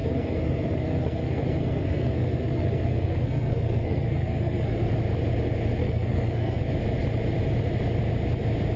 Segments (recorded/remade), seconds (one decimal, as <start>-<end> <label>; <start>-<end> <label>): 0.0-4.9 remade; 4.9-5.8 recorded; 5.8-6.6 remade; 6.6-8.8 recorded